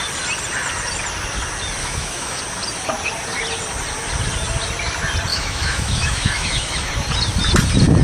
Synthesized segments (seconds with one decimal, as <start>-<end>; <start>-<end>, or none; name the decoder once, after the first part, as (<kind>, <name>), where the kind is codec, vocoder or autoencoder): 1.8-2.4 (autoencoder, DAC-VAE); 5.3-6.9